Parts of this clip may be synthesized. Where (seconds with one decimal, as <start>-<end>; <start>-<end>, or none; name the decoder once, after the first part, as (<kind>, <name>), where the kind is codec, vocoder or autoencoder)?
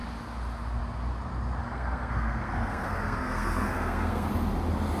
1.6-4.3 (codec, SNAC)